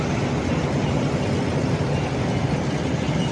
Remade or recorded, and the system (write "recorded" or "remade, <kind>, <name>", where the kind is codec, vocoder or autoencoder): recorded